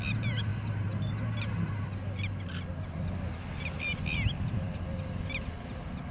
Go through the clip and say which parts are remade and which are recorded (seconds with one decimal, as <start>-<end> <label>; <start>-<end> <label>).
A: 0.0-6.1 recorded